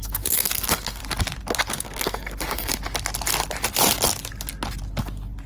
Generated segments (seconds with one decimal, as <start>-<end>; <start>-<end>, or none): 0.0-1.0; 1.7-2.7